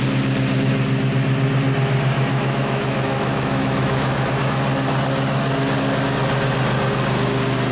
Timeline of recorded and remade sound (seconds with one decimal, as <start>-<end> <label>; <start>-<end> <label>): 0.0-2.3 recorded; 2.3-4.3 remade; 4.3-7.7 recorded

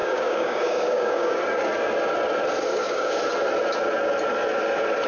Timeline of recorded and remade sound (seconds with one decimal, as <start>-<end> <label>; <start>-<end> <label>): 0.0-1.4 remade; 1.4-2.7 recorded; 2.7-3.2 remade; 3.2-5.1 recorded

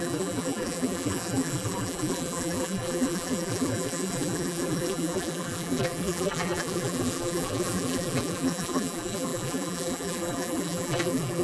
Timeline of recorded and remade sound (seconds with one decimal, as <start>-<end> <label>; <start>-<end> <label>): 0.0-11.4 remade

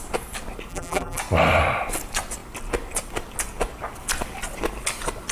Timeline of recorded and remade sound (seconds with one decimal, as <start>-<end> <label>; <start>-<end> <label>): 0.0-0.7 recorded; 0.7-1.2 remade; 1.2-5.3 recorded

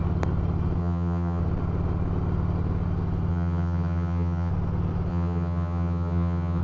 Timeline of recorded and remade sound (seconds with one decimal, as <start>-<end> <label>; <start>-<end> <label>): 0.0-0.8 recorded; 0.8-1.4 remade; 1.4-3.3 recorded; 3.3-4.5 remade; 4.5-5.1 recorded; 5.1-6.6 remade

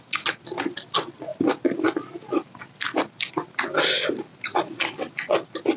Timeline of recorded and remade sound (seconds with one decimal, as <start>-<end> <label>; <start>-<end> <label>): 0.0-4.3 recorded; 4.3-5.1 remade; 5.1-5.8 recorded

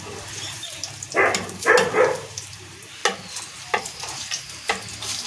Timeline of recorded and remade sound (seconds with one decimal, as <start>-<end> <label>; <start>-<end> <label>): 0.0-3.0 remade; 3.0-3.8 recorded; 3.8-5.3 remade

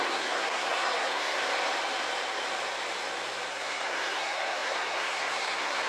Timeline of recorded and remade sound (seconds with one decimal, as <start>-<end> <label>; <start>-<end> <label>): 0.0-1.4 remade; 1.4-3.5 recorded; 3.5-5.9 remade